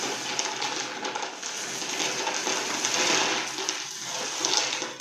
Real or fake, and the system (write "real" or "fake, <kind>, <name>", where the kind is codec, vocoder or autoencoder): real